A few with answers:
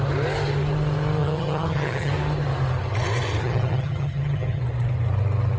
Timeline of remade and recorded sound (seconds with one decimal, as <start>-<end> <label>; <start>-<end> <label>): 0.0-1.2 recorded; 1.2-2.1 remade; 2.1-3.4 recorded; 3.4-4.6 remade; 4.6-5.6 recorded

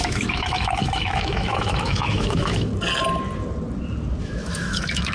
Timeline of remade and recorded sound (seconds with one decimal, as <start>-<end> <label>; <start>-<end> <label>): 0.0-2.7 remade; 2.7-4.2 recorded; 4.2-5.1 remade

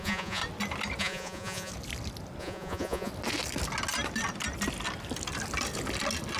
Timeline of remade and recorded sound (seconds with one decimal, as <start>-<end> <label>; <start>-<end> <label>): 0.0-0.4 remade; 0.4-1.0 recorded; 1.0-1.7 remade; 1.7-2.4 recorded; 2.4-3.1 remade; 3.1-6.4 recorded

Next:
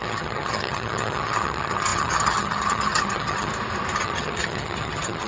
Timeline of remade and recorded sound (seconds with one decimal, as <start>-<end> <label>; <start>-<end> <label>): 0.0-3.5 remade; 3.5-4.0 recorded; 4.0-5.3 remade